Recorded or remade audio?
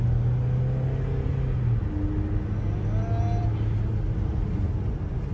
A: recorded